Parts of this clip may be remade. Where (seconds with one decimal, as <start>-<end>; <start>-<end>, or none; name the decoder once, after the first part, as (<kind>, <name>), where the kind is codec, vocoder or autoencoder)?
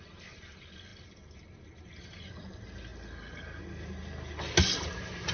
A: none